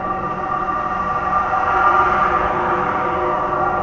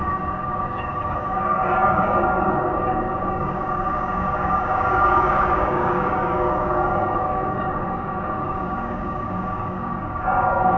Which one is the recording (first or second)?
first